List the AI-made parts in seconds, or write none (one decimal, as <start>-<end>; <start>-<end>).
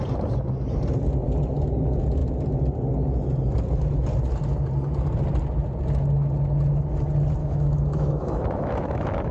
7.4-9.3